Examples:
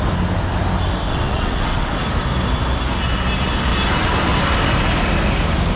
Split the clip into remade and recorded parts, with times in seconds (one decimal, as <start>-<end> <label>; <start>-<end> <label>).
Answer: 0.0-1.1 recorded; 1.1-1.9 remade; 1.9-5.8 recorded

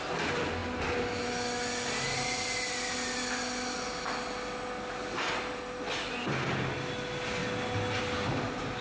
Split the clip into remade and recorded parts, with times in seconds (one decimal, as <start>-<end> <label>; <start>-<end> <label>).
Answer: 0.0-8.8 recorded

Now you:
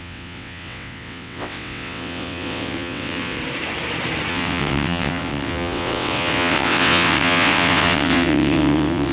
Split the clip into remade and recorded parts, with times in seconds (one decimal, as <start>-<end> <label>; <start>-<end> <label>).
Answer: 0.0-3.4 remade; 3.4-4.3 recorded; 4.3-9.1 remade

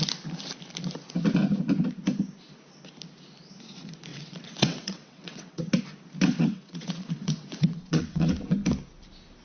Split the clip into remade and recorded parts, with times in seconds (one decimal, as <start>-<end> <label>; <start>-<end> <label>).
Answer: 0.0-4.1 recorded; 4.1-5.8 remade; 5.8-6.3 recorded; 6.3-8.3 remade; 8.3-9.4 recorded

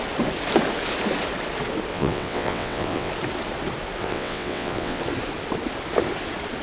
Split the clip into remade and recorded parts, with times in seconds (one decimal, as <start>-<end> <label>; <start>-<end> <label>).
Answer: 0.0-1.9 recorded; 1.9-3.1 remade; 3.1-4.0 recorded; 4.0-5.0 remade; 5.0-6.6 recorded

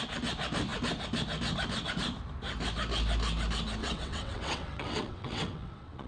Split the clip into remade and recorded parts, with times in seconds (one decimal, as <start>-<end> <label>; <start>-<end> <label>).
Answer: 0.0-3.8 recorded; 3.8-6.1 remade

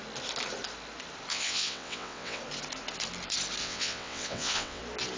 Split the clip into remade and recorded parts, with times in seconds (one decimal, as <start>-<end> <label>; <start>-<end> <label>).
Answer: 0.0-1.3 recorded; 1.3-2.4 remade; 2.4-3.6 recorded; 3.6-4.8 remade; 4.8-5.2 recorded

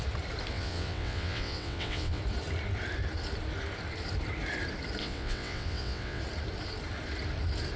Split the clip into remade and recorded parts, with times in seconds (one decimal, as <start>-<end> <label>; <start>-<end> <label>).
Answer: 0.0-0.5 recorded; 0.5-2.2 remade; 2.2-5.0 recorded; 5.0-6.2 remade; 6.2-7.8 recorded